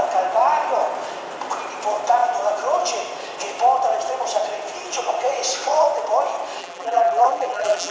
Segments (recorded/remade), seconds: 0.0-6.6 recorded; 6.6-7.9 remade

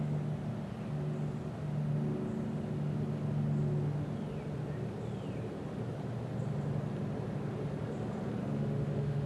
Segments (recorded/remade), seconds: 0.0-8.4 recorded; 8.4-9.3 remade

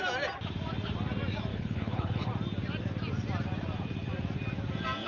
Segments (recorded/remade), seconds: 0.0-1.5 recorded; 1.5-2.3 remade; 2.3-5.1 recorded

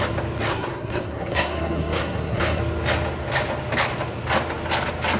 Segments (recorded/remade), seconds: 0.0-0.5 recorded; 0.5-2.6 remade; 2.6-5.2 recorded

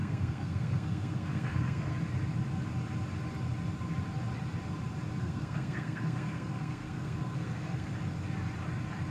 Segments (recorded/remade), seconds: 0.0-1.9 remade; 1.9-5.2 recorded; 5.2-7.9 remade; 7.9-9.1 recorded

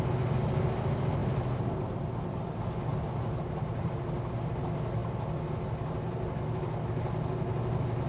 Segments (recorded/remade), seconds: 0.0-8.1 recorded

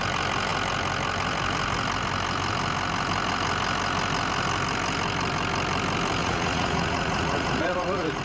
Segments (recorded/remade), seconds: 0.0-6.2 recorded; 6.2-8.2 remade